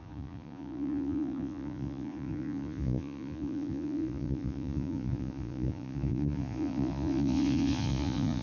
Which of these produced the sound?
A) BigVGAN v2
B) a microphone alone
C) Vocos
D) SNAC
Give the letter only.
C